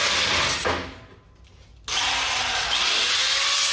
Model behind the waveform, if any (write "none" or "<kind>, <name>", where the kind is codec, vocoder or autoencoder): none